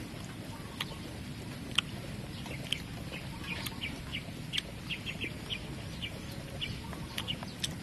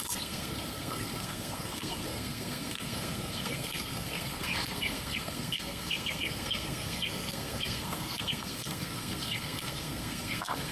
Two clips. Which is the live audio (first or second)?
first